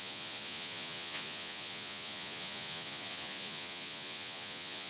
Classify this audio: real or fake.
fake